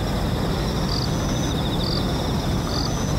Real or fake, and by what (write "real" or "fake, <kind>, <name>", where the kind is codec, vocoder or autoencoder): real